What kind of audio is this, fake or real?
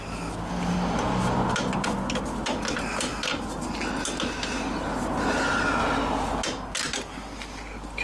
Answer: real